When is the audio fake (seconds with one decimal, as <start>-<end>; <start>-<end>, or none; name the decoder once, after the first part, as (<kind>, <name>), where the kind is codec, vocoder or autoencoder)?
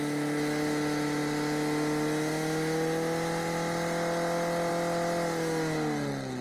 none